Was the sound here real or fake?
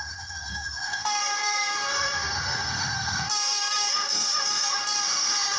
fake